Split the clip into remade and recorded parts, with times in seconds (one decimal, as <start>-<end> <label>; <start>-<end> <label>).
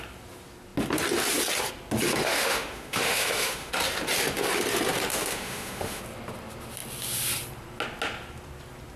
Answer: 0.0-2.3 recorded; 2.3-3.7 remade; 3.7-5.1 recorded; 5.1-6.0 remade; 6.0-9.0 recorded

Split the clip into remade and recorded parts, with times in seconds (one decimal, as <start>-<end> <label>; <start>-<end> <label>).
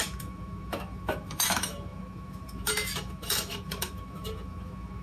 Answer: 0.0-5.0 remade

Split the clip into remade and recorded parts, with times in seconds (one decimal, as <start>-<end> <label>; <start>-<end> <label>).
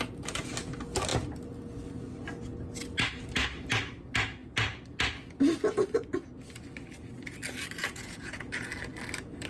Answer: 0.0-7.8 recorded; 7.8-8.7 remade; 8.7-9.5 recorded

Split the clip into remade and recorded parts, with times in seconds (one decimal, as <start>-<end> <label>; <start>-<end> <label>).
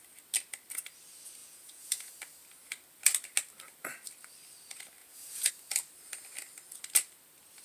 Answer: 0.0-1.4 recorded; 1.4-2.1 remade; 2.1-5.0 recorded; 5.0-5.5 remade; 5.5-7.6 recorded